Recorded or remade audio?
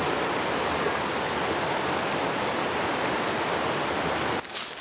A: recorded